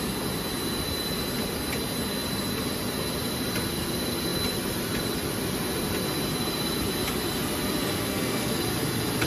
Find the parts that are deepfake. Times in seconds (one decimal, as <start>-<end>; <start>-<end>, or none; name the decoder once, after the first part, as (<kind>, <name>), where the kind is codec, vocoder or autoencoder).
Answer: 7.9-8.6 (codec, SNAC)

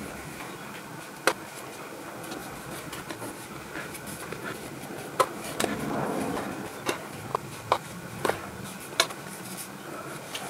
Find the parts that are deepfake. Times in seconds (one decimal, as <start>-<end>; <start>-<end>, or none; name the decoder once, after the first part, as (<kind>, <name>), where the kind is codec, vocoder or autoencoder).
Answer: 7.3-8.0 (vocoder, BigVGAN v2)

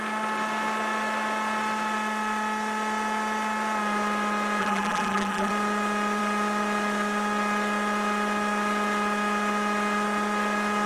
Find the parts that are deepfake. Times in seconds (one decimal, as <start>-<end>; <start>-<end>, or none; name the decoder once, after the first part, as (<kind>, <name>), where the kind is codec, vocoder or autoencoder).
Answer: 4.6-5.5 (vocoder, BigVGAN v2)